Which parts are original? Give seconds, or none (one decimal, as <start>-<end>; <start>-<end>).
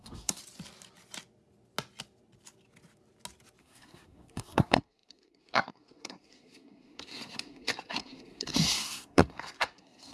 0.4-3.6